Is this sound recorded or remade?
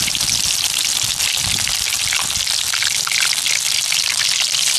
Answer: recorded